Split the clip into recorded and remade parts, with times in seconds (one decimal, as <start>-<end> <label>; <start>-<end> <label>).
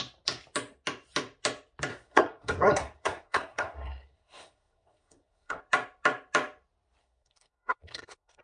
0.0-1.9 recorded; 1.9-5.6 remade; 5.6-7.0 recorded; 7.0-8.4 remade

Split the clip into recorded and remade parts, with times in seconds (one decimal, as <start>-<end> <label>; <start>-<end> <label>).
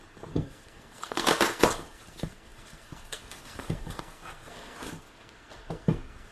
0.0-6.3 remade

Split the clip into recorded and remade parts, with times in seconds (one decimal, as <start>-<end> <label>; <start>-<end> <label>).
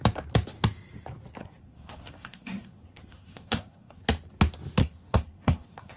0.0-1.4 recorded; 1.4-4.0 remade; 4.0-4.8 recorded; 4.8-6.0 remade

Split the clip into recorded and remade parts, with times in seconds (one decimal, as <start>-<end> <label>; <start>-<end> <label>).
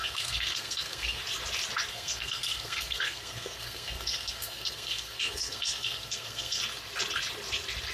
0.0-1.2 remade; 1.2-1.9 recorded; 1.9-6.6 remade; 6.6-7.9 recorded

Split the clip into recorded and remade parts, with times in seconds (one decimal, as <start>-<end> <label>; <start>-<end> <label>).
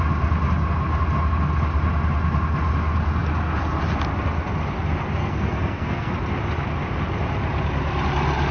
0.0-5.2 recorded; 5.2-6.1 remade; 6.1-8.5 recorded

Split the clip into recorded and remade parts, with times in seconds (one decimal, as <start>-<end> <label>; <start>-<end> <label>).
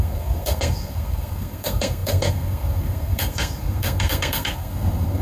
0.0-5.2 remade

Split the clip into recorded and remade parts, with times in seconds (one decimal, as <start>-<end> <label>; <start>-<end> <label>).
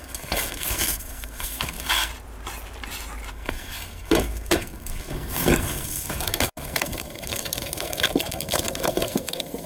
0.0-2.1 remade; 2.1-3.3 recorded; 3.3-9.7 remade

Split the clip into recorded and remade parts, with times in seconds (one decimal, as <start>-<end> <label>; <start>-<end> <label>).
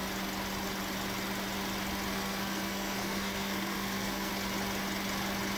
0.0-2.1 recorded; 2.1-4.3 remade; 4.3-5.6 recorded